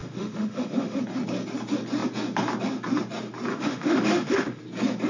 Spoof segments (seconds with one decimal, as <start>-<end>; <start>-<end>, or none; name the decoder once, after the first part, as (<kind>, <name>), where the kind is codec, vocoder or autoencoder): 0.0-1.0 (autoencoder, DAC-VAE); 3.5-4.6